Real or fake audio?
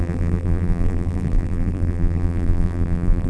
fake